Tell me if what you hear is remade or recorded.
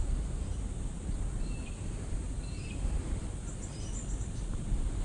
recorded